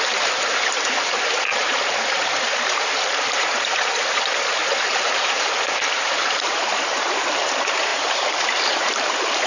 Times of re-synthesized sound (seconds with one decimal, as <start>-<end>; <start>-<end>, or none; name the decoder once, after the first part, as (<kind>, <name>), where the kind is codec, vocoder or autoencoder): 0.0-9.5 (vocoder, BigVGAN v2)